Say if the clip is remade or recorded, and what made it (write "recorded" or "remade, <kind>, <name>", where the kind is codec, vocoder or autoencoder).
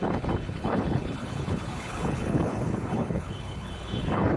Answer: remade, codec, HILCodec